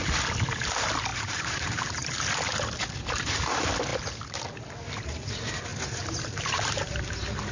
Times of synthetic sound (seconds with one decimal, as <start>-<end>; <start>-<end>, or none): 1.1-2.1; 5.7-7.5